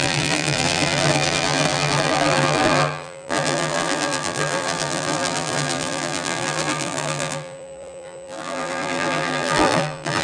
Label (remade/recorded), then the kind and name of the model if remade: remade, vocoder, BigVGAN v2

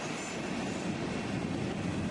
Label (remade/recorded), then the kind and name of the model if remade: recorded